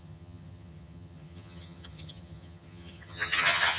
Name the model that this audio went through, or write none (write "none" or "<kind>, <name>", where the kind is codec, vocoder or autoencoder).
vocoder, HiFi-GAN